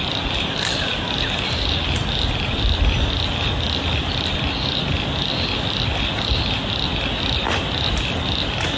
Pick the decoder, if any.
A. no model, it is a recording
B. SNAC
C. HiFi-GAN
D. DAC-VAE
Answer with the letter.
A